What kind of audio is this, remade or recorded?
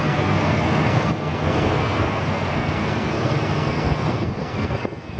remade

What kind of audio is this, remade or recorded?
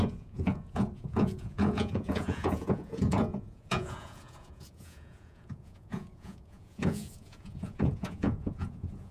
remade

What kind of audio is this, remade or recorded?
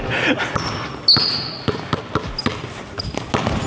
recorded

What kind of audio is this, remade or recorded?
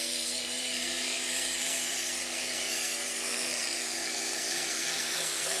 remade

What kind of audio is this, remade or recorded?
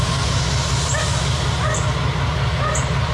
recorded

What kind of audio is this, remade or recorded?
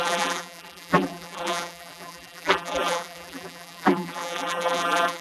remade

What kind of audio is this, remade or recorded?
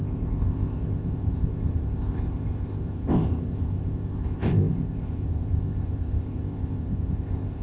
remade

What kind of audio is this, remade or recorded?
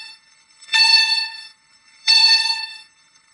remade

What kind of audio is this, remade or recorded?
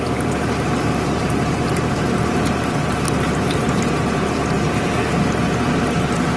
remade